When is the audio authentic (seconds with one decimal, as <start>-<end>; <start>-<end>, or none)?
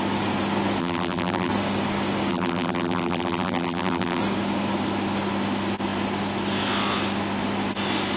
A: 0.0-0.8; 1.5-2.3; 4.2-8.2